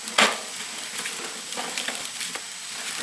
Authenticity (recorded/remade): recorded